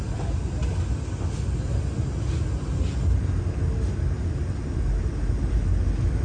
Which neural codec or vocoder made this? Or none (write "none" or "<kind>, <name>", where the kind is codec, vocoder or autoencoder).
none